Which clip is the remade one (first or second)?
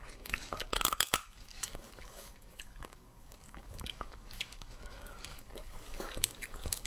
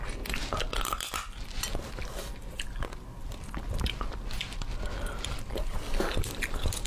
first